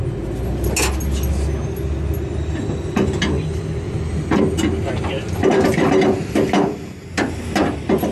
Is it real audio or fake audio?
real